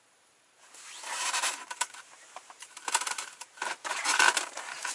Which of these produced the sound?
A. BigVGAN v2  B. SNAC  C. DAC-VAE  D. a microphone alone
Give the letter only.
A